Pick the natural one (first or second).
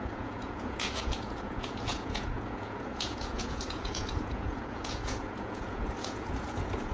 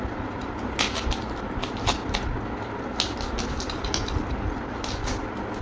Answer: second